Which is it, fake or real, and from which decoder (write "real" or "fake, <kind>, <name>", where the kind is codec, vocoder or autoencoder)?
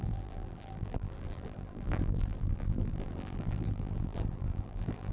fake, vocoder, BigVGAN v2